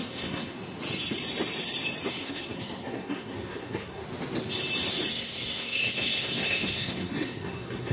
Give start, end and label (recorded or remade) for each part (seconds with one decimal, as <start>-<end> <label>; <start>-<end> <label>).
0.0-0.6 remade; 0.6-2.1 recorded; 2.1-4.0 remade; 4.0-5.1 recorded; 5.1-7.9 remade